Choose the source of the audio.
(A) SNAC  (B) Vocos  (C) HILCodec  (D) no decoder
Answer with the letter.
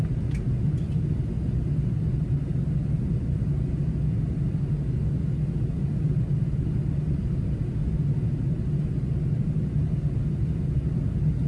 D